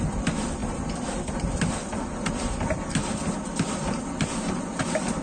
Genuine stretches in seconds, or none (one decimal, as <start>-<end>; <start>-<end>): 0.0-0.6; 1.7-3.0; 4.8-5.2